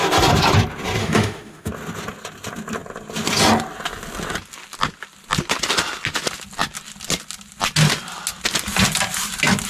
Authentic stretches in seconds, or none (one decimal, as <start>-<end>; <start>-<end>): 0.0-1.0; 1.7-9.7